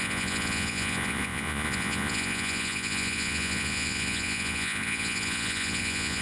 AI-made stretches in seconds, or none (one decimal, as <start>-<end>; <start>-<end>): 0.0-6.2